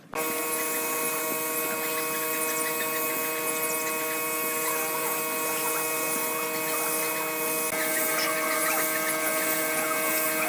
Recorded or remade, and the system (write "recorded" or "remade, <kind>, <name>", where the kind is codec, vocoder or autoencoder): recorded